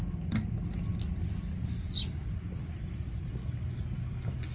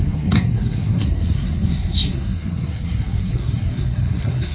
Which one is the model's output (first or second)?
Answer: second